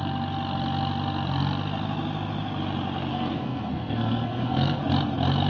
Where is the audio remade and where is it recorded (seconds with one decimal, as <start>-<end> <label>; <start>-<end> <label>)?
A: 0.0-3.1 recorded; 3.1-4.8 remade; 4.8-5.5 recorded